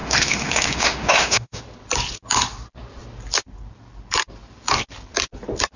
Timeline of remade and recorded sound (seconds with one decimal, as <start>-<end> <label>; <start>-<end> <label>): 0.0-1.6 remade; 1.6-5.8 recorded